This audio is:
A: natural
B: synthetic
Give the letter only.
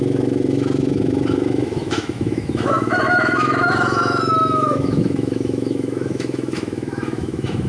B